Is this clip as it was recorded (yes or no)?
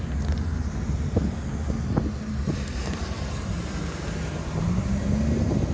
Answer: yes